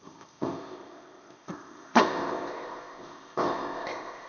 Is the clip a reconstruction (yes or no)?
yes